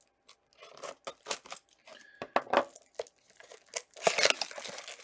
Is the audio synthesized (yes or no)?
no